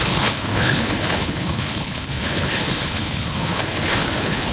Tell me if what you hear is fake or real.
fake